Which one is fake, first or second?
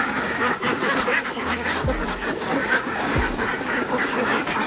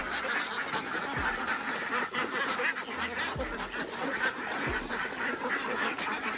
first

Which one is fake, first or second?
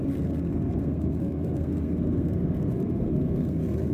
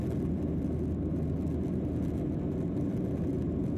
first